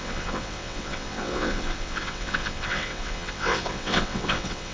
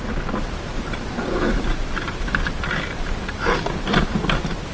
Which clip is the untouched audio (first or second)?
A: second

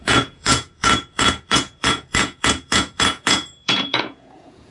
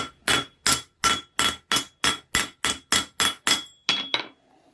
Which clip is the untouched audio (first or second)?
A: second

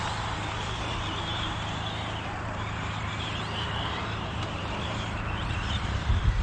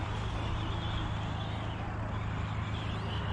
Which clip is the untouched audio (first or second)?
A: second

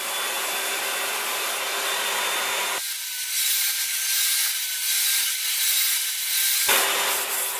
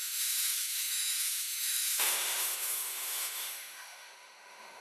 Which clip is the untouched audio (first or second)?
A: first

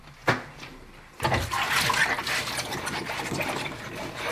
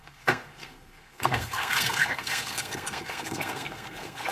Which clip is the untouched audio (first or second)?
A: first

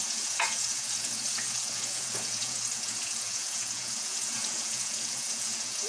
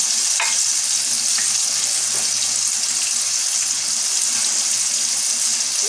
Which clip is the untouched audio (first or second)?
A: second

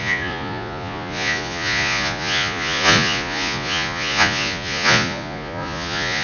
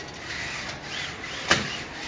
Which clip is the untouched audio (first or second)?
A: second